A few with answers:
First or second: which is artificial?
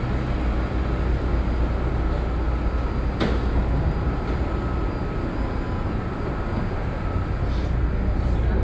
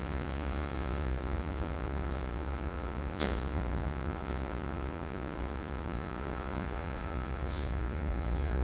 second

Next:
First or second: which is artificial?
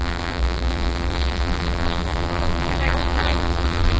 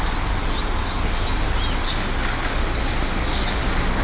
first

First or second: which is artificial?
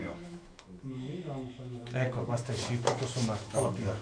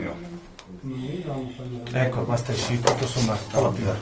first